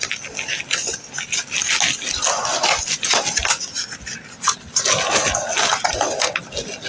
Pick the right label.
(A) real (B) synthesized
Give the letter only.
A